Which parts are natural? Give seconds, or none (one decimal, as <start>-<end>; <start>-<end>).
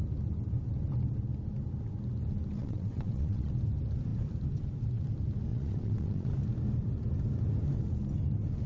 0.0-2.6; 3.5-5.5; 6.3-8.7